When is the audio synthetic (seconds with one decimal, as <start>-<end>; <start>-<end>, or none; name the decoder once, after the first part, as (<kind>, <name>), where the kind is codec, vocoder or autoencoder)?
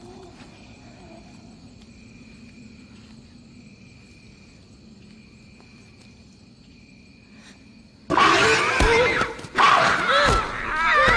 none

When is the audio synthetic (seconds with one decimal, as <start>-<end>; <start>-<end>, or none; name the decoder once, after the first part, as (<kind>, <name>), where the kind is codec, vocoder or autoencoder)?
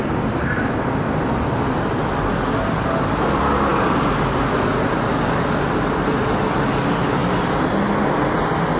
none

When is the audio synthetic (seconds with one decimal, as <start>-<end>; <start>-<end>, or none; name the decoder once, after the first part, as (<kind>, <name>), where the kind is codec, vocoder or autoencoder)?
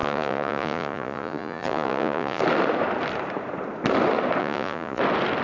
0.0-2.4 (vocoder, Vocos); 4.4-5.0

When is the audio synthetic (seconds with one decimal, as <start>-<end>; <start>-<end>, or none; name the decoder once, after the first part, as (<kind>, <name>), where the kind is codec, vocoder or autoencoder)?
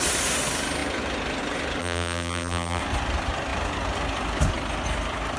1.8-2.8 (vocoder, BigVGAN v2)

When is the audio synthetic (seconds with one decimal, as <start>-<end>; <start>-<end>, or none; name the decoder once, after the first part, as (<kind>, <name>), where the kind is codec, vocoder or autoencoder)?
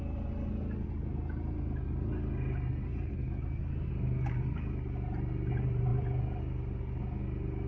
none